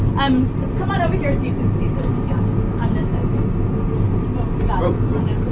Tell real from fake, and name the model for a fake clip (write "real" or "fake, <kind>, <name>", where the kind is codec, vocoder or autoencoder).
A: real